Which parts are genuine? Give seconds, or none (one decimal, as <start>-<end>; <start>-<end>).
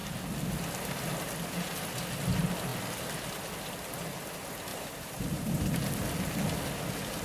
0.0-4.7; 5.9-7.2